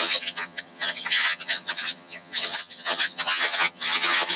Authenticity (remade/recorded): remade